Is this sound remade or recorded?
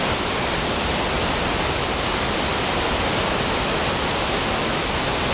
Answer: recorded